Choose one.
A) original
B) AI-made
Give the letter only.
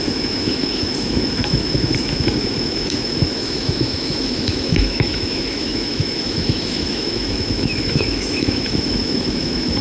B